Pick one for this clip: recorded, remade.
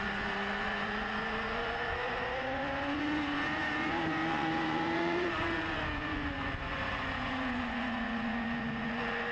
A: remade